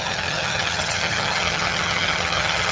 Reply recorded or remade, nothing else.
remade